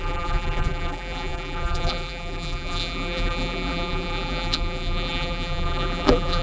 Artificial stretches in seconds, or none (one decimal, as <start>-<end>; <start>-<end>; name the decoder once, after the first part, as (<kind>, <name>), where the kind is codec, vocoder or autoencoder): 0.0-6.4 (vocoder, BigVGAN v2)